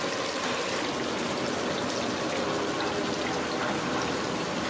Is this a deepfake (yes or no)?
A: no